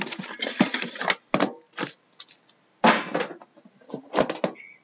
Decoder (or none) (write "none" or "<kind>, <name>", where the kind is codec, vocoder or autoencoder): none